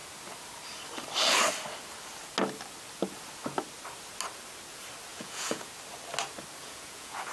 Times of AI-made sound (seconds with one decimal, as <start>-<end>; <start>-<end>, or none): 5.1-5.7; 6.6-7.3